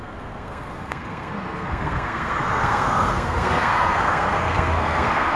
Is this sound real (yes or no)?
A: no